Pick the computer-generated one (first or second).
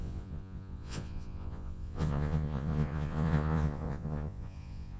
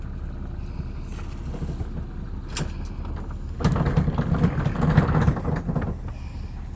first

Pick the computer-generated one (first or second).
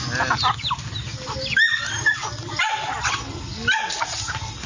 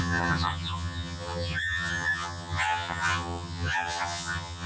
second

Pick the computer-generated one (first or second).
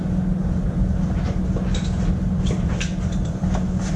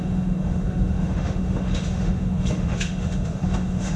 second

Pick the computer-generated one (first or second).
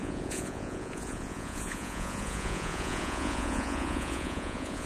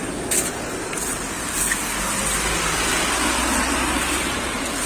first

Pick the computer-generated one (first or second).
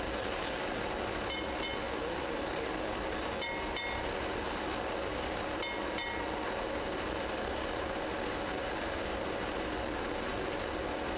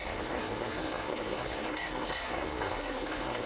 second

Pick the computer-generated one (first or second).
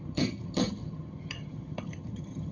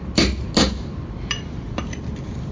first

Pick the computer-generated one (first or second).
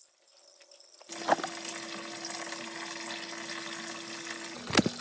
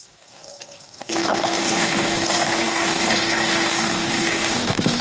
second